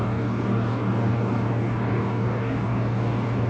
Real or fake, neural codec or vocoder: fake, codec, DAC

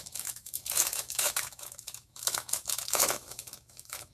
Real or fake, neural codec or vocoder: fake, autoencoder, DAC-VAE